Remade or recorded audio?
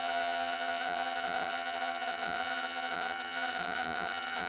remade